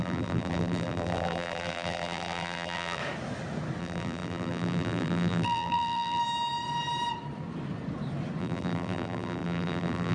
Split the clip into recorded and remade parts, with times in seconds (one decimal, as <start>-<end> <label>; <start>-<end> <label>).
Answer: 0.0-3.0 remade; 3.0-3.8 recorded; 3.8-6.2 remade; 6.2-8.4 recorded; 8.4-10.1 remade